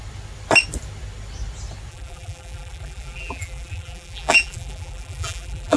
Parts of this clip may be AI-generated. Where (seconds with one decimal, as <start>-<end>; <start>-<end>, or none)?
1.9-5.8